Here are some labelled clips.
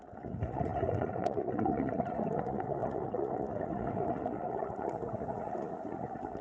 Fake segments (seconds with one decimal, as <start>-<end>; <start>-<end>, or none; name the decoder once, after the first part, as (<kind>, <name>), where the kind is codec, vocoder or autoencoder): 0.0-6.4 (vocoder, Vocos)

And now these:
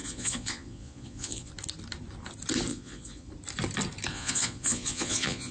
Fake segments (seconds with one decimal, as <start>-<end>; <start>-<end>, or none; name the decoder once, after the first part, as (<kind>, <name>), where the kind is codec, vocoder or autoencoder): 0.0-1.5 (vocoder, Vocos); 2.7-3.3; 4.1-5.5

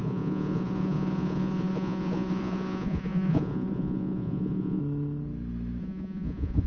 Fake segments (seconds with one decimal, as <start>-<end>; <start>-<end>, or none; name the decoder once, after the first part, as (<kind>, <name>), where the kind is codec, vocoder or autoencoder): 0.0-4.8 (vocoder, Vocos); 5.8-6.7

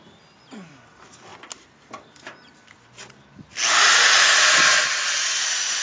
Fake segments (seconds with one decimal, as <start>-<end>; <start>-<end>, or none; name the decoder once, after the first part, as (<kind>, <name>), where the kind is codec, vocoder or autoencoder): none

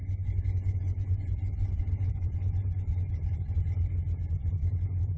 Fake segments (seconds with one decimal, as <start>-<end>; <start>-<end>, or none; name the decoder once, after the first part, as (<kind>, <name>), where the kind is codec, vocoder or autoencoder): 0.0-3.1 (vocoder, Vocos)

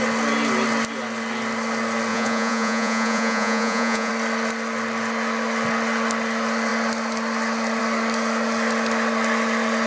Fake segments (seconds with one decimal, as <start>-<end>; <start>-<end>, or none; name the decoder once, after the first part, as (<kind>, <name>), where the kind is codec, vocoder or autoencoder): 2.1-4.1 (vocoder, Vocos)